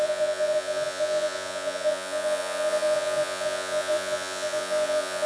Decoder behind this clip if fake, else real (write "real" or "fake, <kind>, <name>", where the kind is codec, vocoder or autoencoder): fake, vocoder, Vocos